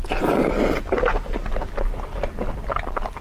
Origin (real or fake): real